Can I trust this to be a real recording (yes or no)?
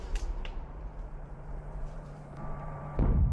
no